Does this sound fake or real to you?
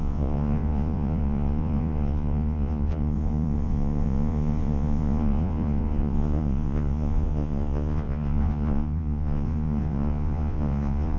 fake